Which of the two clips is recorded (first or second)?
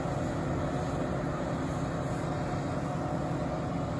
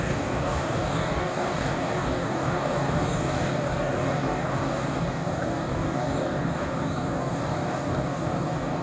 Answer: first